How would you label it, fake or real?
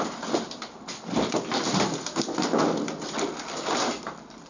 real